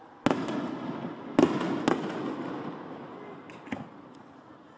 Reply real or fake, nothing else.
real